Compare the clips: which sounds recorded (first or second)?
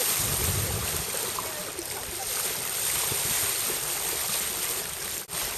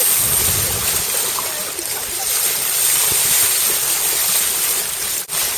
second